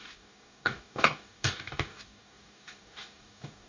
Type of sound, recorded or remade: remade